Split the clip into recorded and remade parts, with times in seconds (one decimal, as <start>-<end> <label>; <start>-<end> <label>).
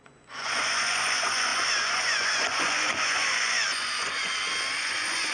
0.0-4.3 remade; 4.3-4.8 recorded; 4.8-5.3 remade